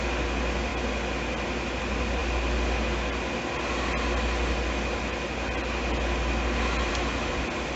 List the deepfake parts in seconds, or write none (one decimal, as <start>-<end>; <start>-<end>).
none